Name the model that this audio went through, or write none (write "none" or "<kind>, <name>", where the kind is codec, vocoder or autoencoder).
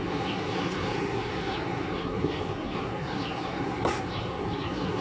codec, SNAC